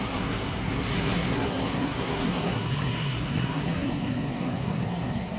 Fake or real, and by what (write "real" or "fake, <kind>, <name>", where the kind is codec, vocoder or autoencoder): fake, codec, SNAC